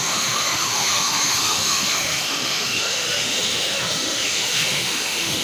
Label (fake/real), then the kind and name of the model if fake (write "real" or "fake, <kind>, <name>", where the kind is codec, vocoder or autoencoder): fake, autoencoder, DAC-VAE